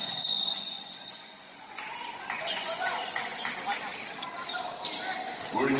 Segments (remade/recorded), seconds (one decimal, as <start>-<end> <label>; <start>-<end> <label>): 0.0-3.5 remade; 3.5-5.8 recorded